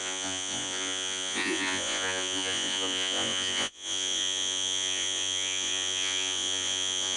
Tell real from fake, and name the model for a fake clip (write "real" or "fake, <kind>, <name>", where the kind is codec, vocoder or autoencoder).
fake, vocoder, Vocos